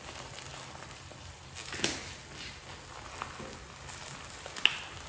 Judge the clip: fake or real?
real